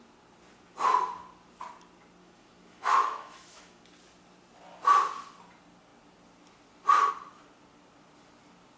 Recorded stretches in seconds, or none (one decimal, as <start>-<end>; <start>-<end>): 0.0-2.2; 3.8-8.8